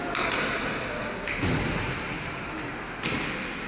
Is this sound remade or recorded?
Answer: recorded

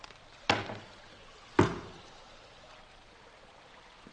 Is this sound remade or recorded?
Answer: recorded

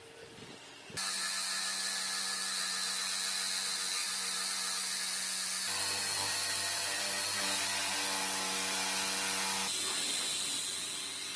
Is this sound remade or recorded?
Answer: recorded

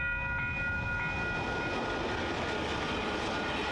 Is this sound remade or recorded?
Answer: recorded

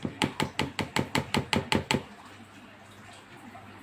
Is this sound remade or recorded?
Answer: recorded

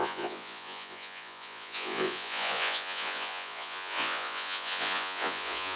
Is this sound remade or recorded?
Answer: remade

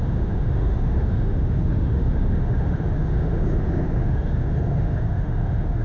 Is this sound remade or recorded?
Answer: remade